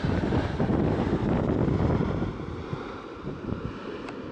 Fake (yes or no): no